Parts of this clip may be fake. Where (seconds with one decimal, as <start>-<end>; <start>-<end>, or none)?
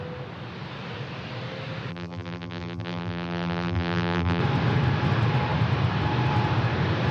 1.9-4.4